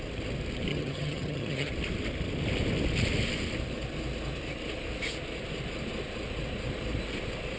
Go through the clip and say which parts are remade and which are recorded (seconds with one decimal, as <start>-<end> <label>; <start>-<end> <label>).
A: 0.0-0.7 recorded; 0.7-1.7 remade; 1.7-7.6 recorded